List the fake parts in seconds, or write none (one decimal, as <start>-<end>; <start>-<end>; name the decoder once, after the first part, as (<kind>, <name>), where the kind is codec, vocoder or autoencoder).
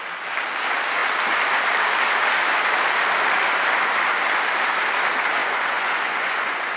5.4-6.8 (vocoder, Vocos)